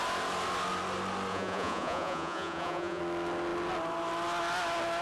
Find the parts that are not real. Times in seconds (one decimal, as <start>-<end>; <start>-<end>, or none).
1.3-3.0